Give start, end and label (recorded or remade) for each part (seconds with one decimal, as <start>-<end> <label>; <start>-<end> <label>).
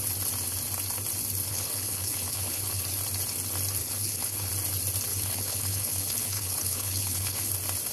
0.0-1.5 recorded; 1.5-2.8 remade; 2.8-3.8 recorded; 3.8-4.5 remade; 4.5-5.1 recorded; 5.1-7.5 remade; 7.5-7.9 recorded